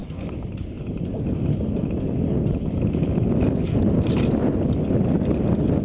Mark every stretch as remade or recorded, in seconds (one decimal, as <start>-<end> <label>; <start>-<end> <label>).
0.0-5.8 recorded